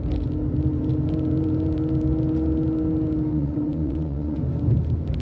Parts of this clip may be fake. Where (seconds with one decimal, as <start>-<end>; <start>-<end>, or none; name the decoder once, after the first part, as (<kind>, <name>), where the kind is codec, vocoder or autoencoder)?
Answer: 3.3-4.4 (vocoder, Vocos)